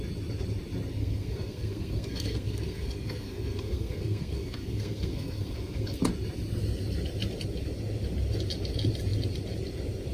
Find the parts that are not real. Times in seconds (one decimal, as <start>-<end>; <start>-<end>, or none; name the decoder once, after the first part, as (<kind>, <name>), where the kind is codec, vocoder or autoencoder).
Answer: 0.9-6.0 (codec, SNAC)